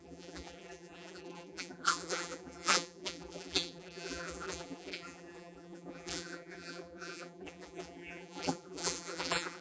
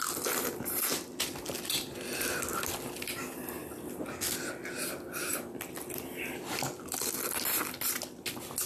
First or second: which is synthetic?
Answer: first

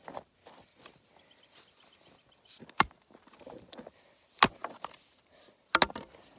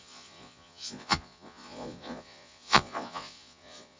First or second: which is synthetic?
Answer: second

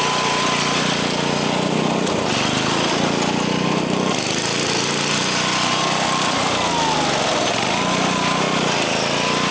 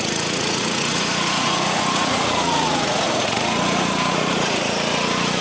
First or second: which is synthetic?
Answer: second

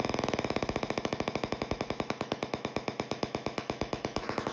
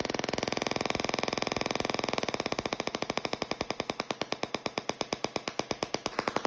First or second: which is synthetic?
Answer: first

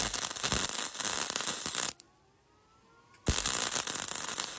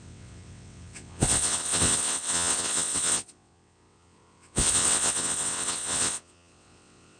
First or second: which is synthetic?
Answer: second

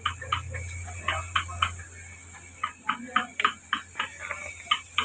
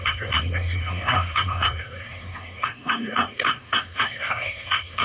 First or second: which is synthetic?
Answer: second